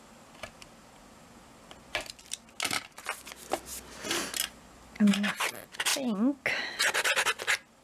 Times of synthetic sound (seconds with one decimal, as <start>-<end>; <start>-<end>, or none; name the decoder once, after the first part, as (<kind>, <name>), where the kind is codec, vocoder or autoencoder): none